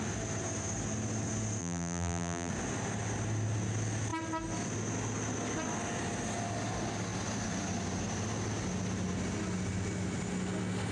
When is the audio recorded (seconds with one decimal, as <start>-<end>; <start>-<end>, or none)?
0.0-1.6; 2.5-10.9